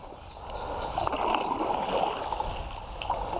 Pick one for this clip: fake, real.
real